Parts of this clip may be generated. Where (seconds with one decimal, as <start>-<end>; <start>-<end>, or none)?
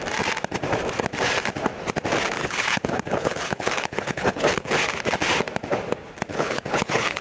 2.4-4.8; 6.3-7.2